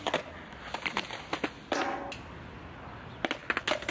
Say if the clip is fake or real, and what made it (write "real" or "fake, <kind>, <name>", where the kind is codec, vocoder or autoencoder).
real